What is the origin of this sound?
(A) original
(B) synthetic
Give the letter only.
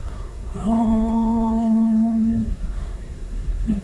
B